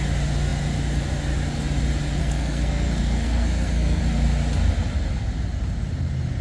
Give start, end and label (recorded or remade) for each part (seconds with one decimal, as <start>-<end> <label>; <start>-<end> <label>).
0.0-2.2 recorded; 2.2-4.0 remade; 4.0-6.4 recorded